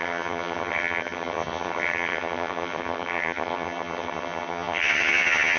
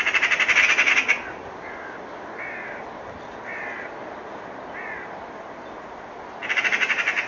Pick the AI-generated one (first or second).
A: first